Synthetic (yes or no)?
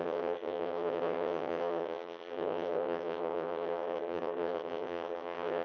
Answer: yes